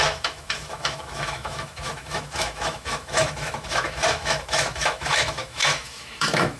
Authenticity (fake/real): fake